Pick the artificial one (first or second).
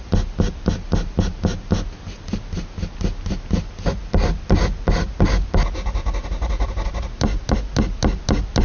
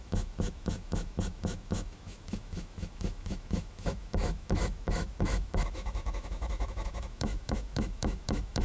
second